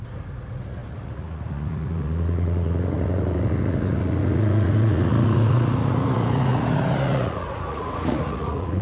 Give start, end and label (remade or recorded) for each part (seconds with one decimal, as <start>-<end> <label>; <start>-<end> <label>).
0.0-8.8 remade